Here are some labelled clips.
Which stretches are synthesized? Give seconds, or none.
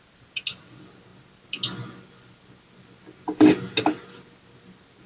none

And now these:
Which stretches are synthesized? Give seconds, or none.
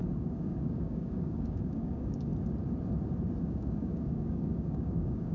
0.0-2.3 (codec, DAC); 3.4-5.3